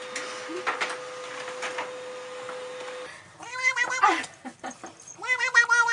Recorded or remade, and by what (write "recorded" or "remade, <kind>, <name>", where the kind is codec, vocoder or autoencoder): recorded